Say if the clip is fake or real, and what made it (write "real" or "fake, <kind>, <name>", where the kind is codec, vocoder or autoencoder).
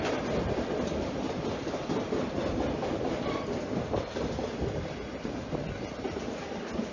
real